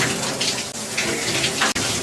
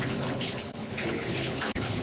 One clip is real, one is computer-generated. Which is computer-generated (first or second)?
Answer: second